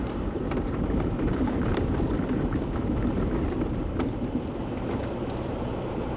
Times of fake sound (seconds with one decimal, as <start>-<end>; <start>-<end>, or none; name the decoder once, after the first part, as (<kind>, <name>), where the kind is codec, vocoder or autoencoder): 0.0-1.7 (vocoder, BigVGAN v2); 5.4-6.2